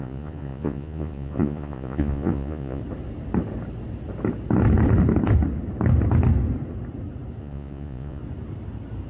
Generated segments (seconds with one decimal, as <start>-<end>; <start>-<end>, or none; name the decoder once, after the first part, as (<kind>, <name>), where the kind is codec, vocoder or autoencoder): 0.0-2.8 (vocoder, Vocos); 7.4-8.2